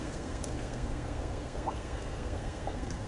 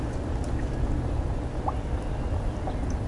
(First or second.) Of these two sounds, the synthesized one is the first